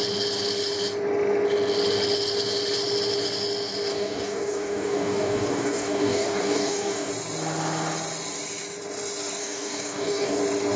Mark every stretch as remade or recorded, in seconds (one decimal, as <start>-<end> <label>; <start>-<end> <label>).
0.0-3.9 recorded; 3.9-7.1 remade; 7.1-9.4 recorded; 9.4-10.4 remade; 10.4-10.8 recorded